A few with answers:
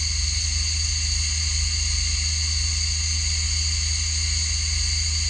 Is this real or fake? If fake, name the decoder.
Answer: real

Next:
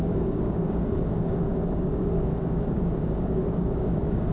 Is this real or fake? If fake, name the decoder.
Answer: fake, codec, DAC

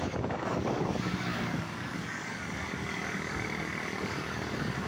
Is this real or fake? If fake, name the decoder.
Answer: fake, codec, DAC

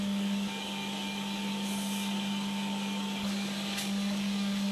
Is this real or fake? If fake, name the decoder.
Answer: fake, codec, DAC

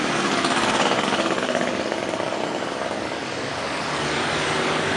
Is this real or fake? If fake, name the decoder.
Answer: fake, codec, DAC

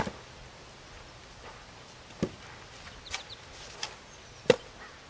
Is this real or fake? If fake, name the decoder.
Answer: real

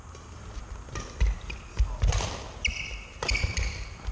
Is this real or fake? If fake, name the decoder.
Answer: real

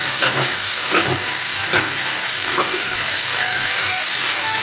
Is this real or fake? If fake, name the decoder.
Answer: fake, codec, DAC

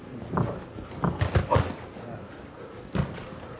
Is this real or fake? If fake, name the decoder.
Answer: real